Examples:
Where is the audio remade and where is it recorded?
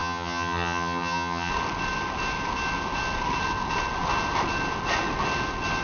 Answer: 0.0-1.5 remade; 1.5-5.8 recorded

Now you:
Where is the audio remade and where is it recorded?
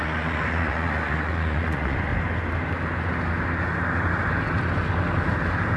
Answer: 0.0-2.1 remade; 2.1-5.8 recorded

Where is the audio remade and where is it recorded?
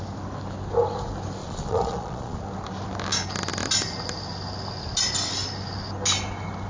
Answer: 0.0-1.4 recorded; 1.4-2.4 remade; 2.4-6.7 recorded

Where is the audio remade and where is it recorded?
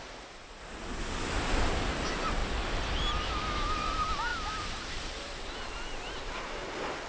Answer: 0.0-4.3 recorded; 4.3-5.4 remade; 5.4-7.1 recorded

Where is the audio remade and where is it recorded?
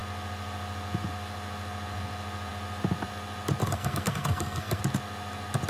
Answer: 0.0-3.6 recorded; 3.6-4.8 remade; 4.8-5.7 recorded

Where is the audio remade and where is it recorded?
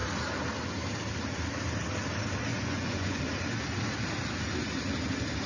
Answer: 0.0-2.5 recorded; 2.5-3.2 remade; 3.2-5.5 recorded